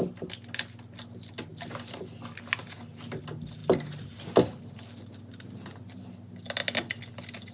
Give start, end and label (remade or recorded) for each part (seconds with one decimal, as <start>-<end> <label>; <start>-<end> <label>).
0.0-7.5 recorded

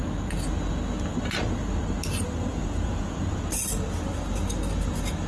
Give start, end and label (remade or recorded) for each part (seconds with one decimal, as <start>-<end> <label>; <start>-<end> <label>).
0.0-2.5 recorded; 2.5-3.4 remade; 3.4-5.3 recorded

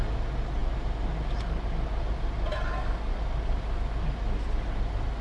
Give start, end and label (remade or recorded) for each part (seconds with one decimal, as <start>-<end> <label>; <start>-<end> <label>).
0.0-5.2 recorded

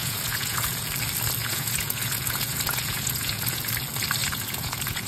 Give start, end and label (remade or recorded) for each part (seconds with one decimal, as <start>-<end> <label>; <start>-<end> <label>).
0.0-0.9 remade; 0.9-1.4 recorded; 1.4-3.7 remade; 3.7-4.2 recorded; 4.2-5.1 remade

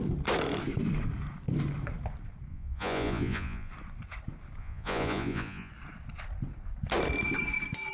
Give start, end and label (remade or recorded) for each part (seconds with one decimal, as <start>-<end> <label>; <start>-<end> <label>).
0.0-2.5 recorded; 2.5-3.7 remade; 3.7-4.6 recorded; 4.6-5.7 remade; 5.7-7.9 recorded

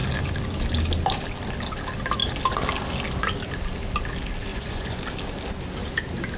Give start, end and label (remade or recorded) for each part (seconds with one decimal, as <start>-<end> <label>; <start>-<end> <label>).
0.0-4.5 recorded; 4.5-5.0 remade; 5.0-6.4 recorded